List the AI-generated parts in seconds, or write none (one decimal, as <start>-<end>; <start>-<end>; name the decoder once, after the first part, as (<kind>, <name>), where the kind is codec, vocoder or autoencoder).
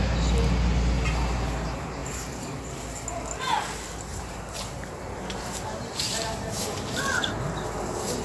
4.1-6.6 (vocoder, BigVGAN v2)